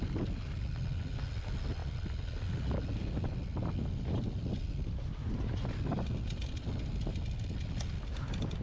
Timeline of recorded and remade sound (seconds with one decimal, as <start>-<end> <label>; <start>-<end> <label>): 0.0-8.6 recorded